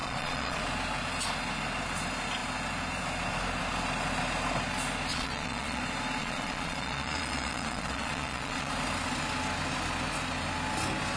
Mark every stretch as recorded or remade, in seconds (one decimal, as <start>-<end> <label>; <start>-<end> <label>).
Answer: 0.0-0.6 remade; 0.6-5.1 recorded; 5.1-5.8 remade; 5.8-6.2 recorded; 6.2-8.7 remade; 8.7-11.2 recorded